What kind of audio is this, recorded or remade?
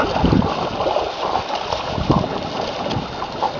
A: recorded